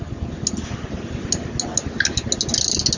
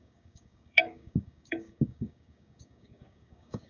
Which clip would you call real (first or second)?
first